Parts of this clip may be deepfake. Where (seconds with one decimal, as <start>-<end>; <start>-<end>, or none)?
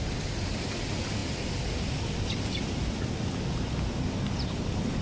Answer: none